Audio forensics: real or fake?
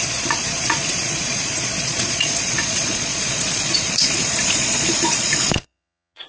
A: fake